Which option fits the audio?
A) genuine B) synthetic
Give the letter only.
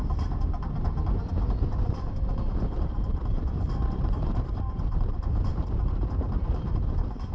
B